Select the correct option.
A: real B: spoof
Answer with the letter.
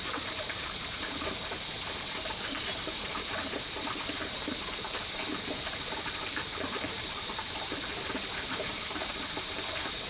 B